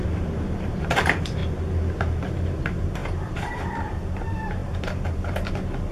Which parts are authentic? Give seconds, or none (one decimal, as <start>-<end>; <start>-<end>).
1.4-2.0